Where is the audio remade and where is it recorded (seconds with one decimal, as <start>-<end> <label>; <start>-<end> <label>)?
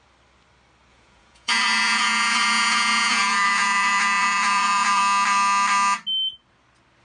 0.0-0.9 recorded; 0.9-5.0 remade; 5.0-7.0 recorded